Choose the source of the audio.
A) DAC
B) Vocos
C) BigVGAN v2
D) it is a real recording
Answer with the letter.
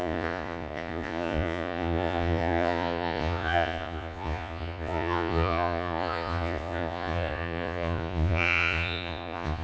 B